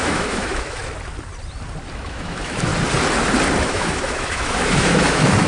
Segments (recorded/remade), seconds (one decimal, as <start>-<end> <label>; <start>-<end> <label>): 0.0-0.8 remade; 0.8-1.9 recorded; 1.9-2.7 remade; 2.7-3.6 recorded; 3.6-5.5 remade